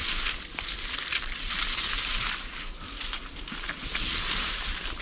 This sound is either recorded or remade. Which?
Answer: recorded